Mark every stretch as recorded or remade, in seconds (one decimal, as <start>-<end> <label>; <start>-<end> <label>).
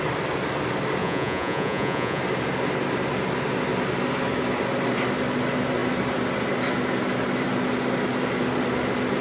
0.0-1.0 recorded; 1.0-2.2 remade; 2.2-9.2 recorded